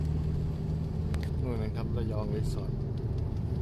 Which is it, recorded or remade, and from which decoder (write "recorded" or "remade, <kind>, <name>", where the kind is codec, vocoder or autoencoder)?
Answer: recorded